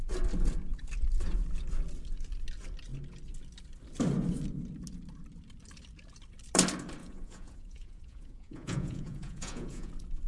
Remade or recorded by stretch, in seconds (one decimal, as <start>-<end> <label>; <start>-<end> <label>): 0.0-7.0 recorded; 7.0-9.9 remade; 9.9-10.3 recorded

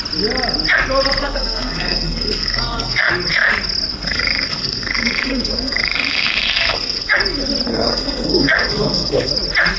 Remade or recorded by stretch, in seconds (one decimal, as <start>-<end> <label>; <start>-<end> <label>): 0.0-1.2 recorded; 1.2-3.1 remade; 3.1-3.9 recorded; 3.9-7.2 remade; 7.2-7.7 recorded; 7.7-9.3 remade; 9.3-9.8 recorded

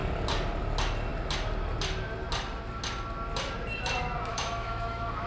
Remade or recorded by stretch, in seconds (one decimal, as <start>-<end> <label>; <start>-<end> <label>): 0.0-4.3 recorded; 4.3-5.3 remade

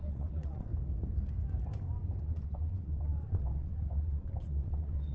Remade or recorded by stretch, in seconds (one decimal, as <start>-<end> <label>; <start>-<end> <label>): 0.0-0.7 remade; 0.7-2.2 recorded; 2.2-5.1 remade